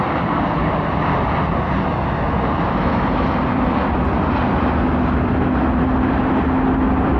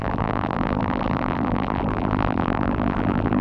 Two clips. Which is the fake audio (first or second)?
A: second